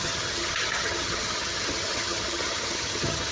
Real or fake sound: fake